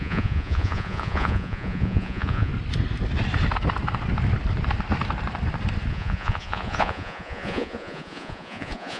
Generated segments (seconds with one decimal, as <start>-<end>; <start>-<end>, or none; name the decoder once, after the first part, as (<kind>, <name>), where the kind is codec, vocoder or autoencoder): 0.0-2.5 (vocoder, Vocos); 5.9-9.0